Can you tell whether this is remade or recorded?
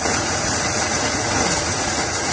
remade